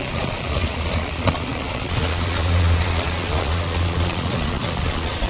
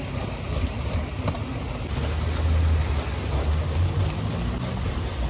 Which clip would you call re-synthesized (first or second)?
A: first